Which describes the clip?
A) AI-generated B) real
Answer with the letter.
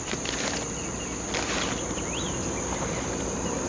B